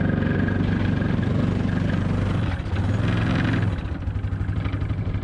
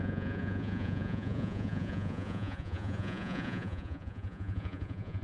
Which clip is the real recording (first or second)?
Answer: first